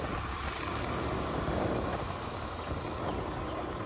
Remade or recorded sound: recorded